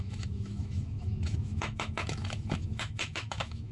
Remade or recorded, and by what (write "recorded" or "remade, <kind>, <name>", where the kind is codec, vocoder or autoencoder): remade, autoencoder, DAC-VAE